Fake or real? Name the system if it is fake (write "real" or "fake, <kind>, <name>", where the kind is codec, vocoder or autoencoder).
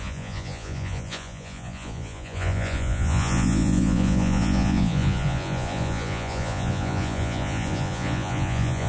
fake, vocoder, Vocos